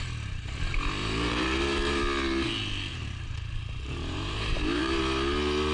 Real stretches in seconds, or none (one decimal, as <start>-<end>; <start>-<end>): 0.0-1.0; 2.0-2.9; 5.0-5.7